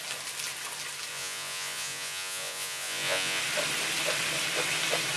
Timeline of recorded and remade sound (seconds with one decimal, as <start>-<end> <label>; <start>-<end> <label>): 0.0-1.1 recorded; 1.1-3.4 remade; 3.4-5.2 recorded